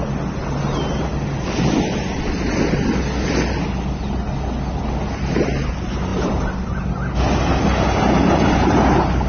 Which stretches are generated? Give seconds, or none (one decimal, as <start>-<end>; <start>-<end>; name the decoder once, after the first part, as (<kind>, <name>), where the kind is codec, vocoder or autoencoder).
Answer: none

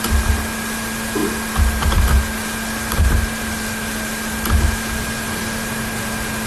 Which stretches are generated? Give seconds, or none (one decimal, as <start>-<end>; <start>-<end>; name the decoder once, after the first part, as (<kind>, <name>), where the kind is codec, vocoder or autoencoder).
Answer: none

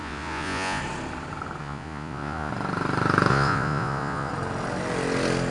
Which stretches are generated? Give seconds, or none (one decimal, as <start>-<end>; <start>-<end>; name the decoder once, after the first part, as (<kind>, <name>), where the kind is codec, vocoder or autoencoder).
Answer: 0.0-0.8 (vocoder, Vocos); 1.6-2.5; 3.3-4.3

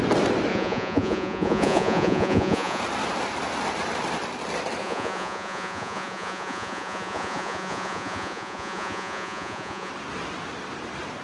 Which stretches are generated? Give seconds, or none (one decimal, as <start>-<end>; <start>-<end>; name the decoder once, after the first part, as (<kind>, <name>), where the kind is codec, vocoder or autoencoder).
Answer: 0.5-2.8 (vocoder, Vocos); 4.8-9.9

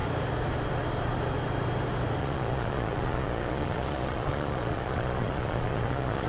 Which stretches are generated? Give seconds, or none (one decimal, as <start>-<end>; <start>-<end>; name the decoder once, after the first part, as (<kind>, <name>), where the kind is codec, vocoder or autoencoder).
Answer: 2.2-6.3 (vocoder, Vocos)

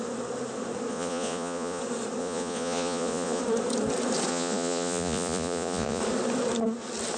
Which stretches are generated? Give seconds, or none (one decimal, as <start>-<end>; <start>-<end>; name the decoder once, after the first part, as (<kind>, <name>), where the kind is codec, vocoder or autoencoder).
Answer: 0.9-1.8 (vocoder, Vocos); 2.2-3.4; 4.3-6.0

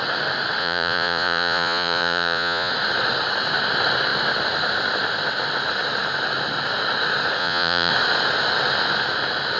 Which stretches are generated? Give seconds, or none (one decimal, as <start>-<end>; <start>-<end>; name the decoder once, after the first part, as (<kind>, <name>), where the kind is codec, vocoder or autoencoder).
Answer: 0.6-2.7 (vocoder, Vocos); 7.4-7.9